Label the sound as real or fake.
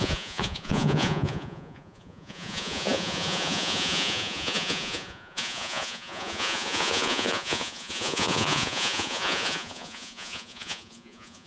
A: fake